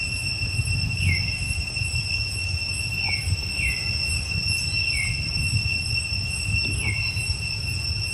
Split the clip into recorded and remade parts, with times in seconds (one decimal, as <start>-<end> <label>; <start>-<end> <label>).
0.0-8.1 recorded